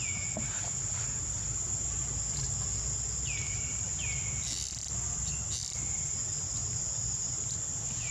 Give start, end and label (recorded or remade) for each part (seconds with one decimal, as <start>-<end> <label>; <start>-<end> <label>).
0.0-3.4 recorded; 3.4-4.0 remade; 4.0-6.6 recorded; 6.6-7.3 remade; 7.3-8.1 recorded